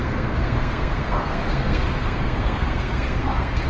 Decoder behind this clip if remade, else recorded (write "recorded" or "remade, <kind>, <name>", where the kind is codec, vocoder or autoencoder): remade, codec, SNAC